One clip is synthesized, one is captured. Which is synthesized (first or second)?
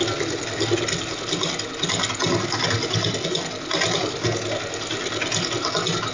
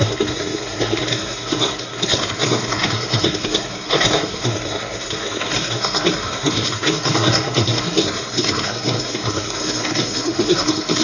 second